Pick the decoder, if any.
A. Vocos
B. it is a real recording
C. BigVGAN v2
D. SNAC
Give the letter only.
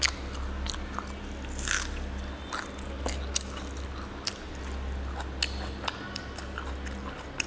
B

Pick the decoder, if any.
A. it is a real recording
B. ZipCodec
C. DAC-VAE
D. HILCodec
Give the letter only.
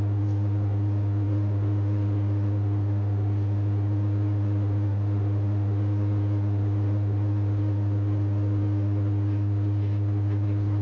C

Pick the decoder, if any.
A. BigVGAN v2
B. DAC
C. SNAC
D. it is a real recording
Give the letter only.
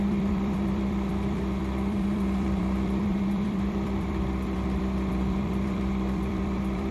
A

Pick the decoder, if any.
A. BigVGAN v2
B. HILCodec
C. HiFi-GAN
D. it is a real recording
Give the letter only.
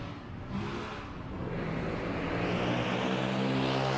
D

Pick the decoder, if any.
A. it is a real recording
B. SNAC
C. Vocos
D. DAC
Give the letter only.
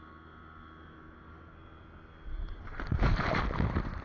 A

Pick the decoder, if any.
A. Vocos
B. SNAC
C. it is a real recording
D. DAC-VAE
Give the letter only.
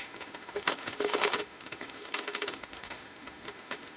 D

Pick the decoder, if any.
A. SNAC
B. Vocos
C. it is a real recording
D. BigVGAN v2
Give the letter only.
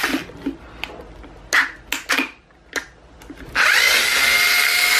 C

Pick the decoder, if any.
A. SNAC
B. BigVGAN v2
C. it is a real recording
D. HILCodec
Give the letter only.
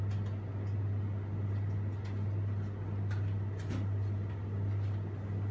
C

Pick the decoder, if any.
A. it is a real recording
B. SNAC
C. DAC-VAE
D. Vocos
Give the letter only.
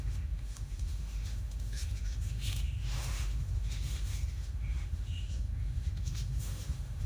C